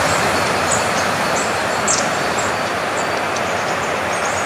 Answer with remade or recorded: remade